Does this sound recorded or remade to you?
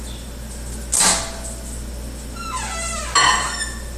recorded